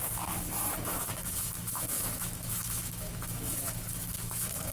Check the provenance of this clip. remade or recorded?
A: remade